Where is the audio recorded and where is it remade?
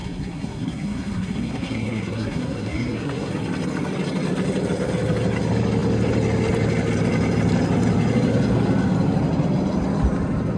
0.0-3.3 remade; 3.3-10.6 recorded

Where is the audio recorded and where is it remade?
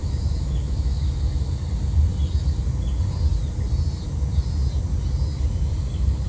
0.0-1.4 remade; 1.4-6.3 recorded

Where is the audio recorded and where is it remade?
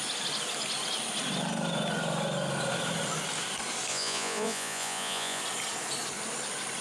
0.0-3.9 recorded; 3.9-5.4 remade; 5.4-6.8 recorded